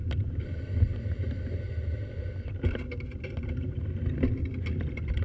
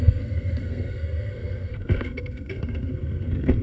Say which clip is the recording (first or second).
first